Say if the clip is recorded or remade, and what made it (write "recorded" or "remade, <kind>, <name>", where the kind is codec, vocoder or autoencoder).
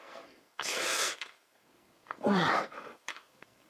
remade, codec, SNAC